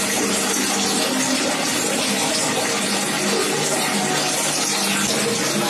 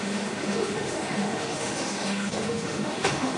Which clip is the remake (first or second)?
second